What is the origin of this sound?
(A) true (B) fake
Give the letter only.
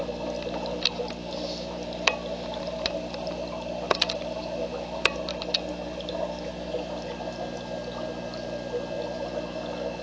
A